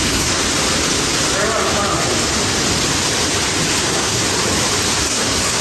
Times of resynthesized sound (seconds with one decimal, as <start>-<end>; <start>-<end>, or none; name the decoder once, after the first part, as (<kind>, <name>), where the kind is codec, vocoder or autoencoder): 0.0-0.4 (codec, SNAC); 3.8-4.2; 5.0-5.6